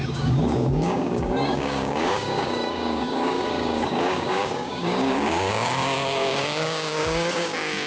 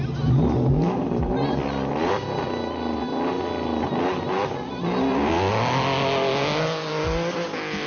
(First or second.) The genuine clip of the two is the second